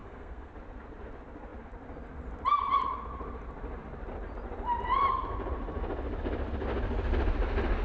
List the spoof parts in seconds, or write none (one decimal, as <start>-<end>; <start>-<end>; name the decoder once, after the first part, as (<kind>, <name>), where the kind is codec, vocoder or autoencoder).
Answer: 0.0-0.5 (codec, SNAC)